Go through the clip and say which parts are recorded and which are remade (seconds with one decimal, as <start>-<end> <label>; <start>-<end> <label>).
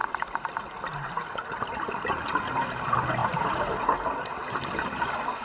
0.0-5.4 recorded